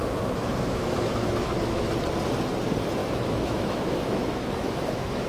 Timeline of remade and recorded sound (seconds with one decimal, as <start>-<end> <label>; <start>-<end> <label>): 0.0-1.9 remade; 1.9-3.0 recorded; 3.0-5.3 remade